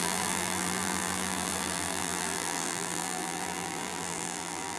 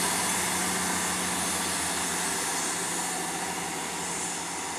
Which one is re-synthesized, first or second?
first